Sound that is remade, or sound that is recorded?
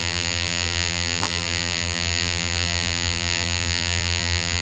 remade